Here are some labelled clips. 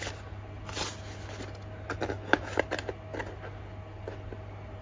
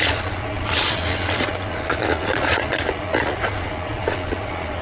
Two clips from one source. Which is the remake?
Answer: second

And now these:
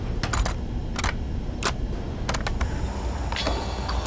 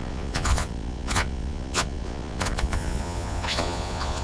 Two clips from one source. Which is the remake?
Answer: second